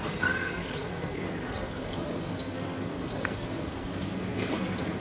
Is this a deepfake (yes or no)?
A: yes